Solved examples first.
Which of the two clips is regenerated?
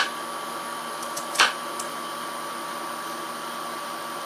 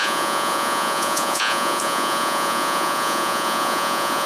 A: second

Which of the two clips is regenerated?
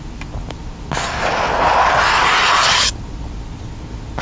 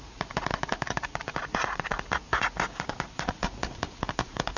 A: second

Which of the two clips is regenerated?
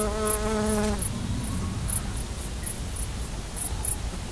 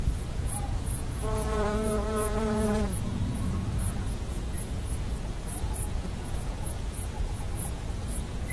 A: second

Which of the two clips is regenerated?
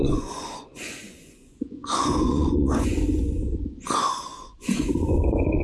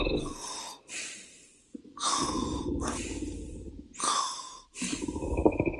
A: first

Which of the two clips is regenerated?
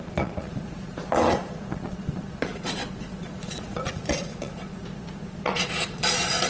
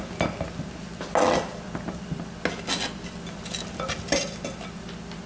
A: first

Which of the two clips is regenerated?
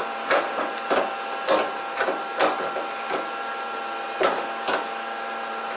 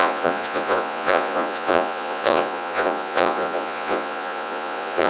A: second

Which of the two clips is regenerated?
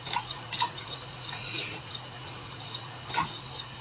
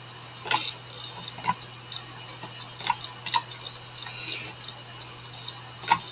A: first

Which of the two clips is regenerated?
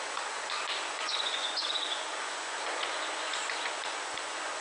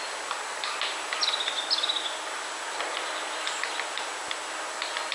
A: first